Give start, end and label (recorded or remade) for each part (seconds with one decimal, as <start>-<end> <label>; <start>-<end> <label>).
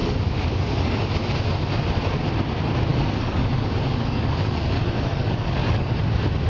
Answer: 0.0-1.1 remade; 1.1-2.9 recorded; 2.9-6.0 remade; 6.0-6.5 recorded